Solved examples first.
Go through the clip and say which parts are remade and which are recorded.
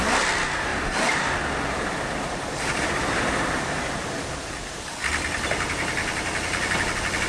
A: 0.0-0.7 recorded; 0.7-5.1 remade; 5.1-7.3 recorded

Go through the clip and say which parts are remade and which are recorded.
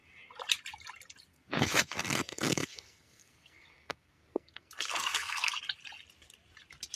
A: 0.0-1.3 recorded; 1.3-5.5 remade; 5.5-7.0 recorded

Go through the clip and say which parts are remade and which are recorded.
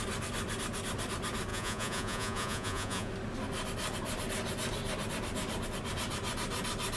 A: 0.0-1.5 recorded; 1.5-3.1 remade; 3.1-7.0 recorded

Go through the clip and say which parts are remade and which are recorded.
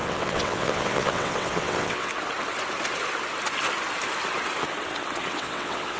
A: 0.0-2.1 remade; 2.1-5.3 recorded; 5.3-6.0 remade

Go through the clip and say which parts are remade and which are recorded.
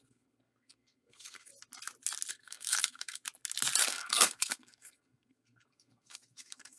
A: 0.0-1.5 remade; 1.5-2.3 recorded; 2.3-3.2 remade; 3.2-3.9 recorded; 3.9-6.8 remade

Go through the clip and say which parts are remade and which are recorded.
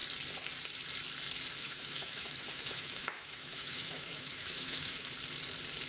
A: 0.0-1.6 recorded; 1.6-5.1 remade; 5.1-5.9 recorded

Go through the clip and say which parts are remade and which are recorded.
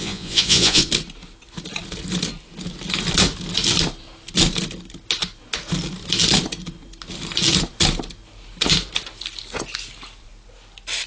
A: 0.0-0.9 remade; 0.9-11.1 recorded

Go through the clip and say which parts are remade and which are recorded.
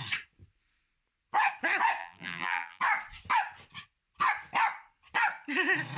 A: 0.0-2.0 recorded; 2.0-2.8 remade; 2.8-6.0 recorded